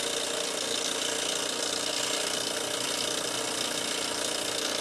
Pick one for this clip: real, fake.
real